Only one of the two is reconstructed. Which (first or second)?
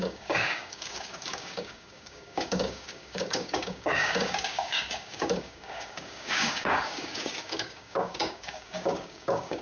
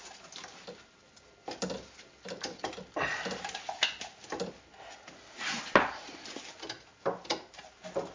first